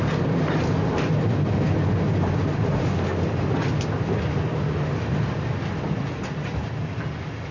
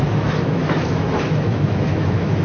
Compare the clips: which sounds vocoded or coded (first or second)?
second